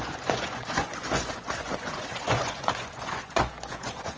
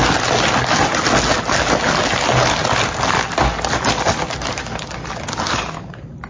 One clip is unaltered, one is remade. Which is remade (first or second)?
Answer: first